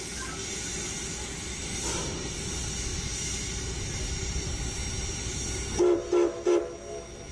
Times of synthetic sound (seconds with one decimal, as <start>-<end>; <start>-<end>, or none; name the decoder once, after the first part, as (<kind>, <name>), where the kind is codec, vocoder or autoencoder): none